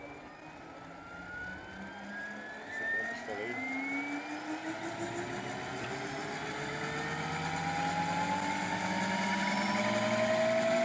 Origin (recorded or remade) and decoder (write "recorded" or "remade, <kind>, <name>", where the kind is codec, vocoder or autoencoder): recorded